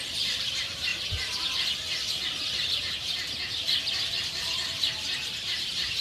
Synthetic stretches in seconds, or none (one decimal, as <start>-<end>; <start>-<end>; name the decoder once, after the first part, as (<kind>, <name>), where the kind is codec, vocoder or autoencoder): 0.0-0.9 (vocoder, BigVGAN v2); 4.3-6.0